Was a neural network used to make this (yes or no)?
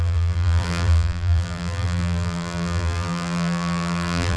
yes